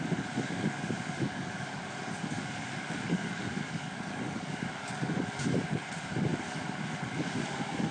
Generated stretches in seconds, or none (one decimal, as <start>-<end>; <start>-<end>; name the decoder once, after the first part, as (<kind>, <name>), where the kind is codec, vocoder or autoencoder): 0.0-7.9 (codec, DAC)